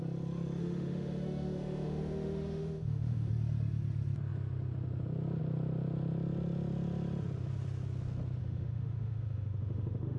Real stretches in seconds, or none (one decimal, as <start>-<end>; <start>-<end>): 0.0-0.6; 3.3-8.4